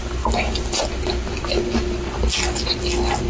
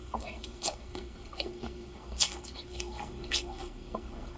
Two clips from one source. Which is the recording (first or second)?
first